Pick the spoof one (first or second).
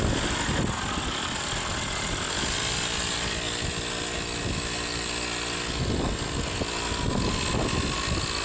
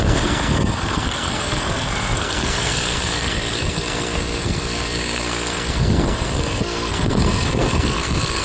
second